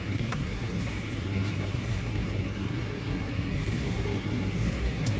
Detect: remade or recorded remade